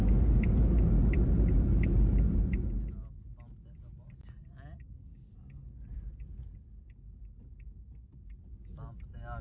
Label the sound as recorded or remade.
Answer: recorded